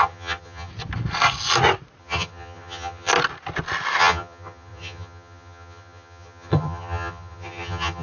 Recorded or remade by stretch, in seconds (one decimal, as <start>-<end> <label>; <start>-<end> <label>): 0.0-0.7 remade; 0.7-2.0 recorded; 2.0-3.1 remade; 3.1-4.0 recorded; 4.0-8.0 remade

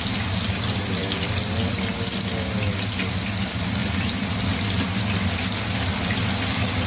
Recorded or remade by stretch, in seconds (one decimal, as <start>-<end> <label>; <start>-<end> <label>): 0.0-3.8 recorded; 3.8-4.4 remade; 4.4-6.9 recorded